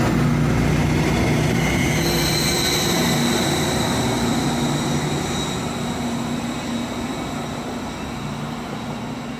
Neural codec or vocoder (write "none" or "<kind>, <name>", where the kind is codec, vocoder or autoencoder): none